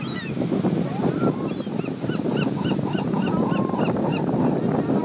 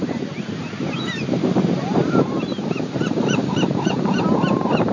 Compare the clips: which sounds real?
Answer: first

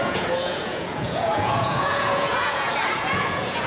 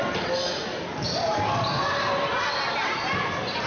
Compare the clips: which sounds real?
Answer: second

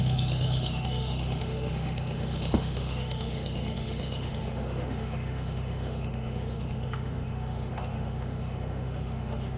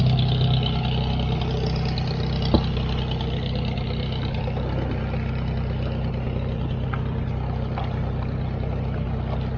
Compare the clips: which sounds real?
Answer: second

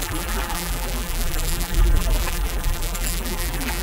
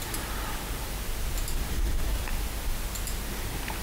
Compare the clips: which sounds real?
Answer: second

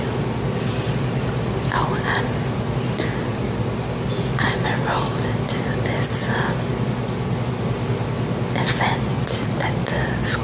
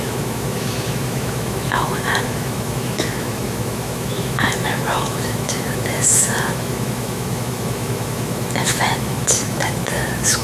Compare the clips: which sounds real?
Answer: first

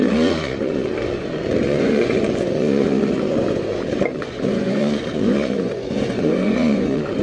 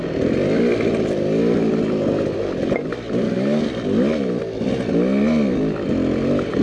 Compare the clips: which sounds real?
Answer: second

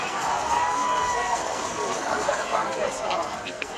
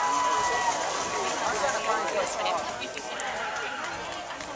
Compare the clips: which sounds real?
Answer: second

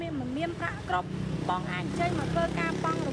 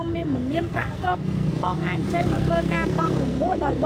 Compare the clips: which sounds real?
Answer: first